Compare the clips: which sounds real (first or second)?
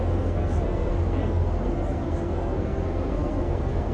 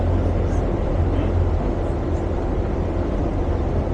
second